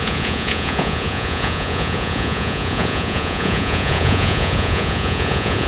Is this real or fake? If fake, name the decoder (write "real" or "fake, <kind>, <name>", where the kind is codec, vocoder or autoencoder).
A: fake, vocoder, Vocos